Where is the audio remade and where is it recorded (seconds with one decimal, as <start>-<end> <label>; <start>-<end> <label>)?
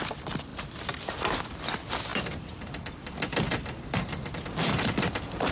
0.0-0.5 recorded; 0.5-1.6 remade; 1.6-2.1 recorded; 2.1-5.5 remade